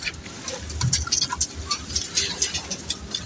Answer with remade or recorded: recorded